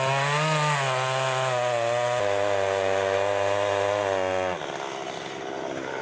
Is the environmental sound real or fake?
real